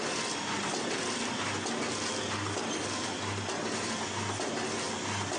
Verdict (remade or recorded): recorded